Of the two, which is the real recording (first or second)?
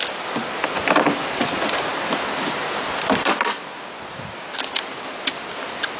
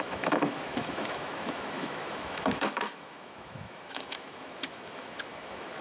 first